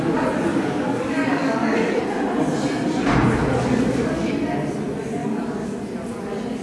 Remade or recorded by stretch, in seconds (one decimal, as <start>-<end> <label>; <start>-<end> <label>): 0.0-0.5 recorded; 0.5-2.0 remade; 2.0-3.4 recorded; 3.4-4.3 remade; 4.3-5.2 recorded; 5.2-5.7 remade; 5.7-6.6 recorded